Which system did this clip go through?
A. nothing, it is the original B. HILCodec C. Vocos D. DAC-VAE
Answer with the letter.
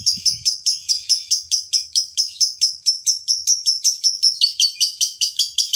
D